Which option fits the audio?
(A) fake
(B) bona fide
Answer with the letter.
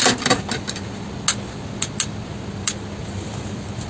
B